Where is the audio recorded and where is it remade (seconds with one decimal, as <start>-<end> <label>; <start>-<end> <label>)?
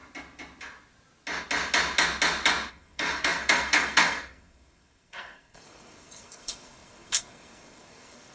0.0-2.7 recorded; 2.7-8.3 remade